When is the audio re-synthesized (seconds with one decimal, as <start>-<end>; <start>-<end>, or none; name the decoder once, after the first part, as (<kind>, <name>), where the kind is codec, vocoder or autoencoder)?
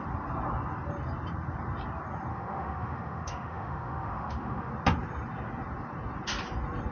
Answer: 2.3-4.7 (autoencoder, DAC-VAE)